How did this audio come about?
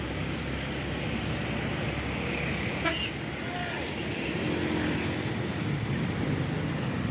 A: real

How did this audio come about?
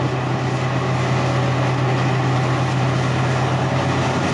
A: real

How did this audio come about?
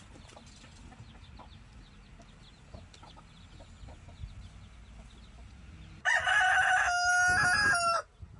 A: real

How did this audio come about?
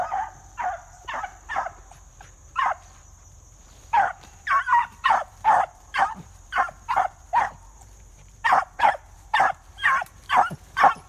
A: fake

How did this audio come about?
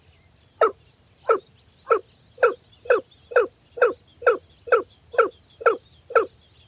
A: real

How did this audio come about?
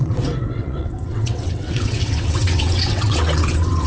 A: fake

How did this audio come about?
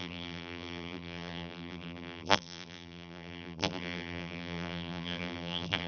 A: fake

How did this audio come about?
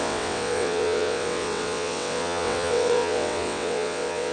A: fake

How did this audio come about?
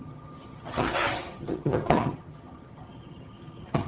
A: fake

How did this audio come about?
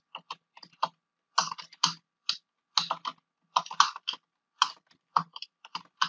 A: real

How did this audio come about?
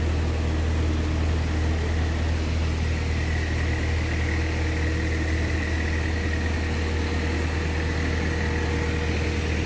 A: real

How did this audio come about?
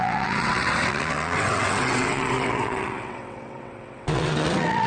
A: fake